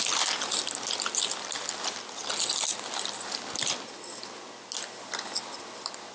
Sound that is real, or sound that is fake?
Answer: real